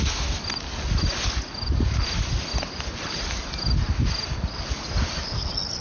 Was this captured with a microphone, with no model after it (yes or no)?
yes